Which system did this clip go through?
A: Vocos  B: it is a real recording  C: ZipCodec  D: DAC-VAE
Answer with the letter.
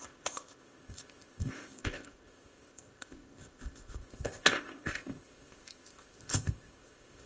C